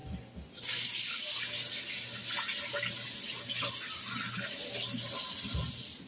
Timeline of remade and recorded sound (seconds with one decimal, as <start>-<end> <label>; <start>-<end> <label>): 0.0-6.1 recorded